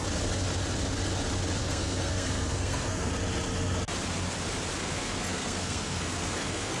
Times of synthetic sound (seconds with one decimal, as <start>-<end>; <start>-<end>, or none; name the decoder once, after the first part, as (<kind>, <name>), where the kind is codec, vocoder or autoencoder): 1.6-3.1 (codec, SNAC); 4.8-6.8